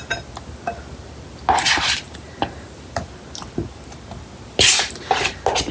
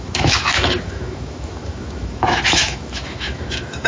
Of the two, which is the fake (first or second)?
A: second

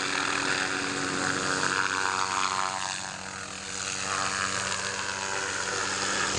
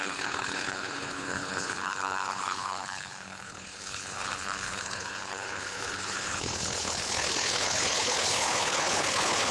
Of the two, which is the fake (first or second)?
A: second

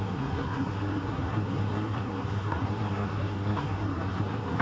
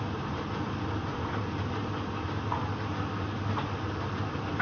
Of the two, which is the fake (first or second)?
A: first